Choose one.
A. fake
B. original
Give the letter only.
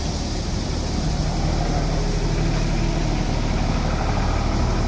B